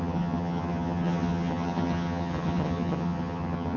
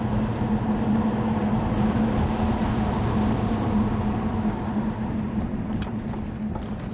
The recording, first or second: second